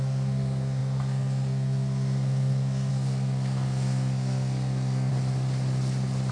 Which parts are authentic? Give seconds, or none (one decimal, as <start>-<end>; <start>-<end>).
5.1-6.3